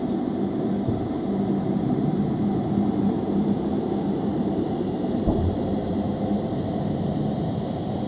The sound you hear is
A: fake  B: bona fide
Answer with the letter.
A